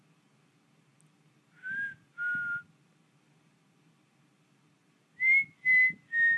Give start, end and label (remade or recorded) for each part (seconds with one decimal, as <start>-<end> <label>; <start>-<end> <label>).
0.0-6.4 recorded